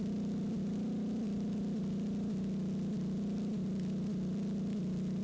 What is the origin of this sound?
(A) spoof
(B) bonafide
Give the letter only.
B